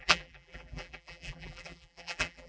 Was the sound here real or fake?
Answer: fake